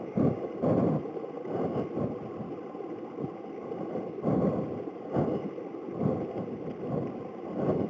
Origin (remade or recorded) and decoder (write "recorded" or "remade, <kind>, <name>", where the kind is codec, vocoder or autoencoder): recorded